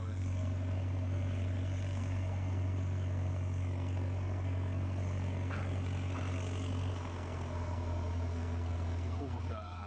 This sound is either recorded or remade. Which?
remade